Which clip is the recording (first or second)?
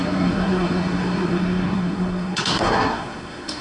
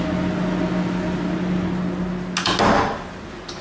second